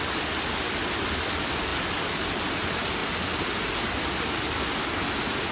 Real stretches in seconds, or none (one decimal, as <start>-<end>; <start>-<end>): 0.0-5.5